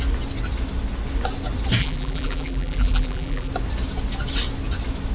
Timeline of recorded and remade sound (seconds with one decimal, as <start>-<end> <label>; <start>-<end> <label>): 0.0-1.8 recorded; 1.8-3.5 remade; 3.5-5.1 recorded